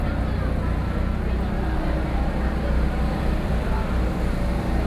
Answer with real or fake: real